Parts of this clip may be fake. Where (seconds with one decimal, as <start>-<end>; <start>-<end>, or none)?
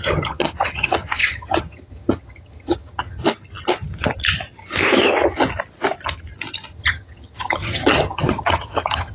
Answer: 0.0-3.2; 6.7-9.1